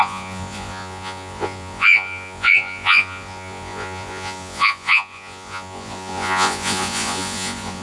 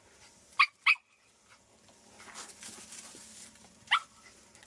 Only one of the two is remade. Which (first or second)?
first